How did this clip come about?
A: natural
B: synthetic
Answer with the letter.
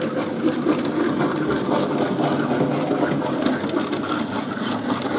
A